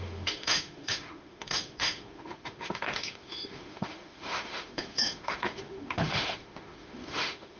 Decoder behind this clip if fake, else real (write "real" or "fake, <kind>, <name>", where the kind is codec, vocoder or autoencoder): fake, autoencoder, DAC-VAE